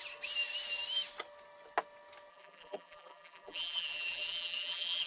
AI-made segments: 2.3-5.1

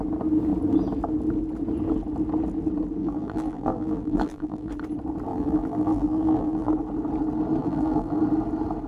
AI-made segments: 3.0-4.7; 5.3-6.7; 7.6-8.2

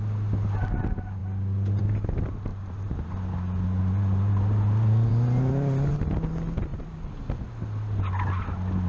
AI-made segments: 2.5-3.1; 6.7-7.2

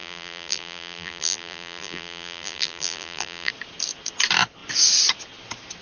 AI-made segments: 0.0-3.5